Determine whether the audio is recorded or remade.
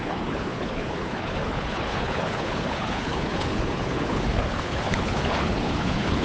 remade